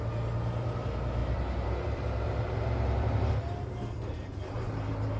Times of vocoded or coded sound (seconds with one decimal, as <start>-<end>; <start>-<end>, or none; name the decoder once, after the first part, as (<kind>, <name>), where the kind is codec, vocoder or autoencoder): 1.2-3.3 (vocoder, BigVGAN v2)